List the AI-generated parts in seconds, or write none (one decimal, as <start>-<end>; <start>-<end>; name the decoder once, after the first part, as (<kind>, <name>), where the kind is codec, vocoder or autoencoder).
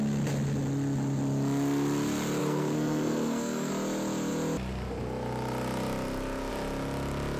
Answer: 2.4-3.7 (codec, SNAC)